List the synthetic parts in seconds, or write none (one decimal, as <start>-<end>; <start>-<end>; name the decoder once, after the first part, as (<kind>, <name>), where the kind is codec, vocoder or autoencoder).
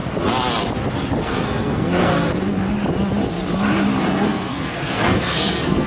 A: 1.2-2.1 (codec, SNAC); 4.0-5.9